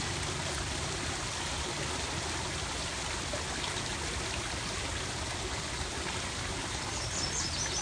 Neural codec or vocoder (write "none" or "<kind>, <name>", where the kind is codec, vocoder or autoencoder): none